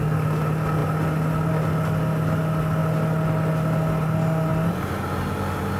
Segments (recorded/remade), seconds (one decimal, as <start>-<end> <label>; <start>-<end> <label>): 0.0-5.8 recorded